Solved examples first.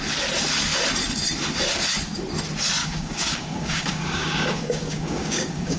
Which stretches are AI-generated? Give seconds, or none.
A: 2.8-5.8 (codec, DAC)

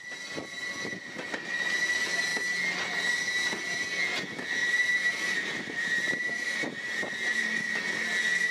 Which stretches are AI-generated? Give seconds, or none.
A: 4.6-7.4 (vocoder, BigVGAN v2)

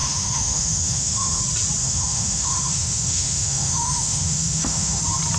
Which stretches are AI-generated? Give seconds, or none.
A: 0.0-1.4 (autoencoder, DAC-VAE); 1.8-5.0